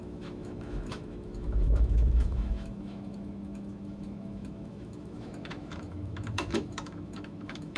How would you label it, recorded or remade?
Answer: remade